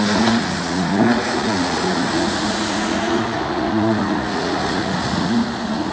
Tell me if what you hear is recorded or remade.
remade